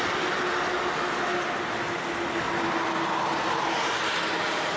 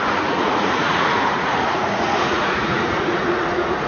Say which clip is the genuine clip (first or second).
first